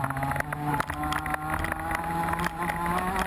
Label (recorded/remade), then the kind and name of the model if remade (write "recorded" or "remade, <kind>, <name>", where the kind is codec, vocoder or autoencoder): recorded